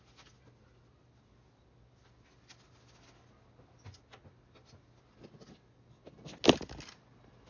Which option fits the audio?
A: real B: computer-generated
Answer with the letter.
A